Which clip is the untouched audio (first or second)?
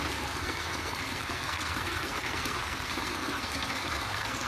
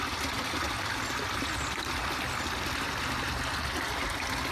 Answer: second